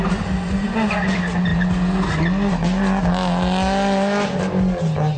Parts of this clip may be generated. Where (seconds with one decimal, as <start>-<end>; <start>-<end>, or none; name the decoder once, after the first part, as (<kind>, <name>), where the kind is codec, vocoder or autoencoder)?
none